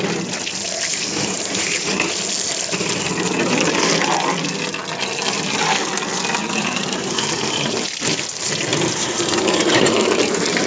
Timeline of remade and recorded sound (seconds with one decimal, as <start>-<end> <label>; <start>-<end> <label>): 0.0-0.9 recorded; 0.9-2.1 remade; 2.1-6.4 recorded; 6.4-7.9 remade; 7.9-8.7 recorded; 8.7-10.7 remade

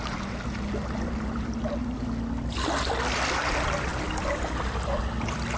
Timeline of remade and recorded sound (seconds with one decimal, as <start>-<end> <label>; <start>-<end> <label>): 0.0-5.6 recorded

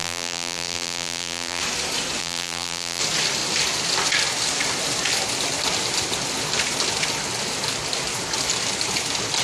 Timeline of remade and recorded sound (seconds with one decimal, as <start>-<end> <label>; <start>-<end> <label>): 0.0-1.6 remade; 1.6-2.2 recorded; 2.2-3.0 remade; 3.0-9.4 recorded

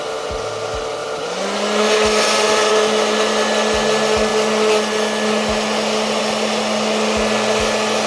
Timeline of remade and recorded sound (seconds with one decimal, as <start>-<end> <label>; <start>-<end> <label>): 0.0-8.1 recorded

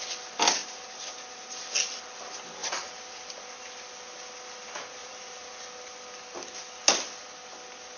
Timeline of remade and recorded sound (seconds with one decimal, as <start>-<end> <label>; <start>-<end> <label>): 0.0-0.6 recorded; 0.6-1.5 remade; 1.5-2.6 recorded; 2.6-3.2 remade; 3.2-5.0 recorded; 5.0-5.6 remade; 5.6-8.0 recorded